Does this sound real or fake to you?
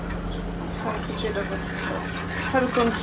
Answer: real